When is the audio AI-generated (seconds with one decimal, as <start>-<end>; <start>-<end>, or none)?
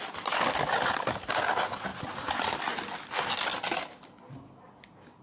none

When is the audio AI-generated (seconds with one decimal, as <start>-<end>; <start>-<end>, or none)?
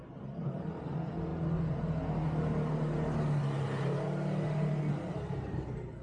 none